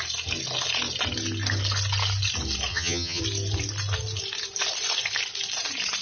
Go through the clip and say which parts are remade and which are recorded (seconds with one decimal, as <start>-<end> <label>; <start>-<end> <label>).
0.0-2.7 recorded; 2.7-3.2 remade; 3.2-6.0 recorded

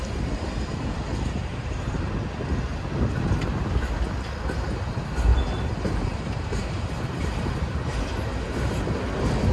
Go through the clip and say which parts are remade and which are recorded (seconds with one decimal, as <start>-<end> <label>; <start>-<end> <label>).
0.0-1.4 recorded; 1.4-2.1 remade; 2.1-5.3 recorded; 5.3-8.0 remade; 8.0-9.5 recorded

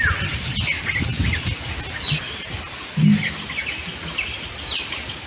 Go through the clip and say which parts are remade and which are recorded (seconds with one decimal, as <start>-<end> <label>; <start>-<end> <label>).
0.0-5.3 recorded

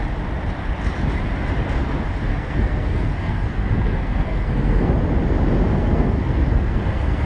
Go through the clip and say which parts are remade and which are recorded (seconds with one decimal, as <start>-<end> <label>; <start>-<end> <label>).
0.0-2.3 recorded; 2.3-4.9 remade; 4.9-5.7 recorded; 5.7-7.3 remade

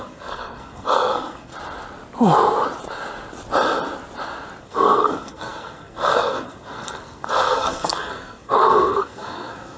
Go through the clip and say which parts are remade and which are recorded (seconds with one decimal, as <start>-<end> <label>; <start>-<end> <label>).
0.0-1.5 remade; 1.5-4.6 recorded; 4.6-9.8 remade

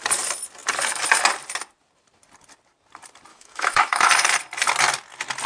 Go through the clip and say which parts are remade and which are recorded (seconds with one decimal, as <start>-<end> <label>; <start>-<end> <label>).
0.0-3.3 recorded; 3.3-4.1 remade; 4.1-5.5 recorded

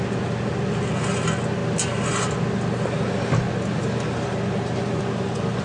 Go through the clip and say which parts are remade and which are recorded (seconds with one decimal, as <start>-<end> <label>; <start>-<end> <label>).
0.0-5.6 recorded